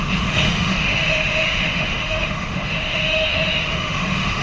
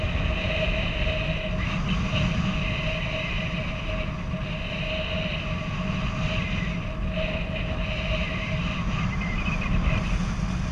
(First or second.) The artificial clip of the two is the first